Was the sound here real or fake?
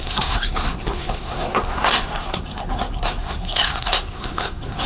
fake